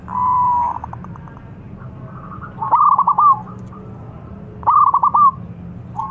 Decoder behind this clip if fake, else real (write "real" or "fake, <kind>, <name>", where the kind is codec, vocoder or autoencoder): real